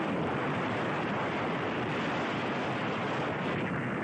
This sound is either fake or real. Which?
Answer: real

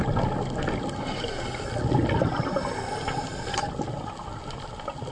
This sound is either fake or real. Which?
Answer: real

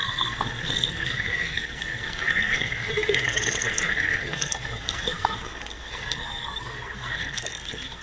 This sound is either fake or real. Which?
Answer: fake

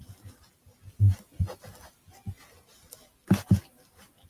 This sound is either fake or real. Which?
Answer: real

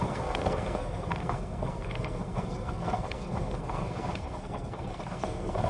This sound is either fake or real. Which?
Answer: fake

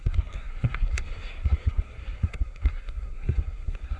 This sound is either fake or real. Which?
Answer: fake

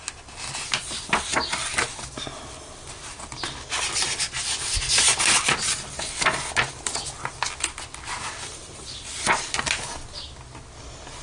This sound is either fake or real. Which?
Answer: real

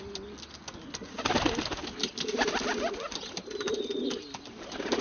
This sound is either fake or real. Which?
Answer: real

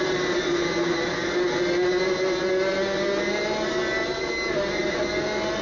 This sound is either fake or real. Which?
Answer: real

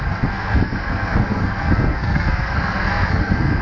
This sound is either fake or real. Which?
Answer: fake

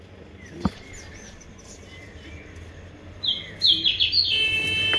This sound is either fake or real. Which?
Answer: real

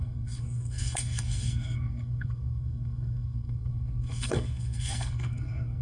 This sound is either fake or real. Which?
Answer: fake